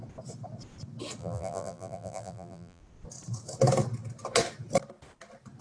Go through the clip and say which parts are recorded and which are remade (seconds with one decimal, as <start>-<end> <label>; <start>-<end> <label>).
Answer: 0.0-1.2 recorded; 1.2-2.8 remade; 2.8-5.6 recorded